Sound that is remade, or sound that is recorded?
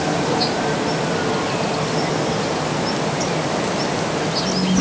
recorded